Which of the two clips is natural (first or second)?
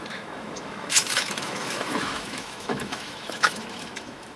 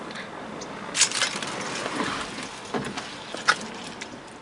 second